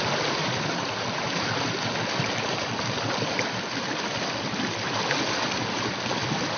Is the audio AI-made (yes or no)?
no